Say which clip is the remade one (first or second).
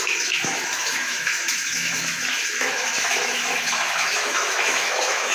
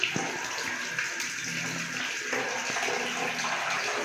first